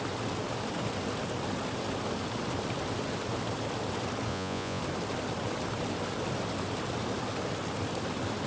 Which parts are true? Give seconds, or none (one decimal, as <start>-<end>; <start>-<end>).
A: 0.0-4.3; 4.8-8.5